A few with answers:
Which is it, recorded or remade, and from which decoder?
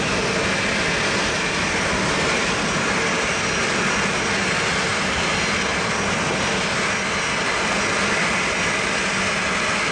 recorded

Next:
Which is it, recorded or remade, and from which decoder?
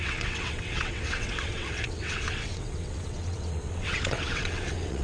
remade, vocoder, WaveNeXt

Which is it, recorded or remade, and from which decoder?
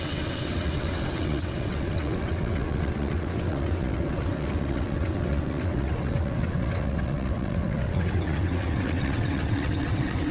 remade, vocoder, WaveNeXt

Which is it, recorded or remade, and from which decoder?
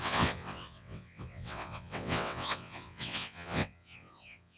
remade, vocoder, WaveNeXt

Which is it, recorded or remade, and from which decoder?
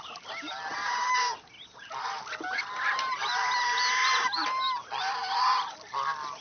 recorded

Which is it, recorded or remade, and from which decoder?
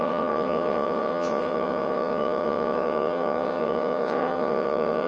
remade, vocoder, WaveNeXt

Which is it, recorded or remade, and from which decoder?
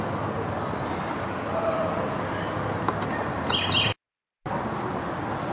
recorded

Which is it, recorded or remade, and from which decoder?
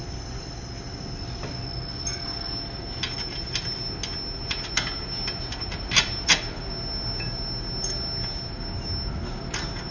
recorded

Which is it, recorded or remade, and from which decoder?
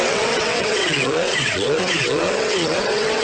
remade, vocoder, WaveNeXt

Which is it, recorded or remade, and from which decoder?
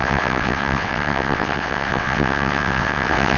remade, vocoder, WaveNeXt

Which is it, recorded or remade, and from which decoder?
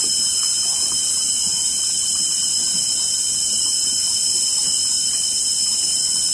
recorded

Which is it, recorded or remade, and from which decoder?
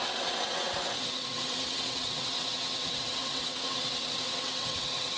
remade, vocoder, WaveNeXt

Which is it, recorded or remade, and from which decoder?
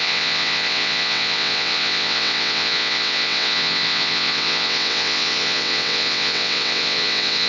remade, vocoder, WaveNeXt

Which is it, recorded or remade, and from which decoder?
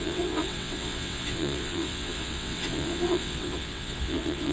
remade, vocoder, WaveNeXt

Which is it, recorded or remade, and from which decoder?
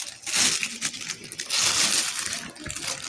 recorded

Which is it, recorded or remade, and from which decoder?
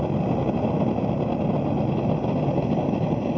recorded